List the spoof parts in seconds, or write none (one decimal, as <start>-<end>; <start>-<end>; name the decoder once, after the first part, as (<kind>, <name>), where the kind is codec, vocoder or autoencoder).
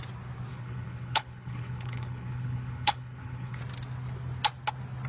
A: 0.5-3.6 (codec, HILCodec)